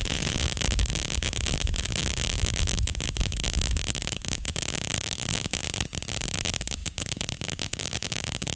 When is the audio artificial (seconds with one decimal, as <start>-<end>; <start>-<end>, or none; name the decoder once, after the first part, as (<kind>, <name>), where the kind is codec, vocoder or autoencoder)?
0.0-5.6 (codec, DAC); 6.3-8.6